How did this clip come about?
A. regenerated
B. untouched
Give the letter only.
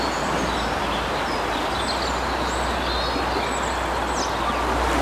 B